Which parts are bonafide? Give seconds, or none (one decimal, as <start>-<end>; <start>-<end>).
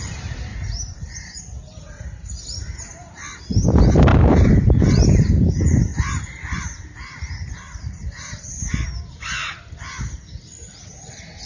0.0-0.5; 1.4-4.1; 5.3-5.9; 8.6-11.5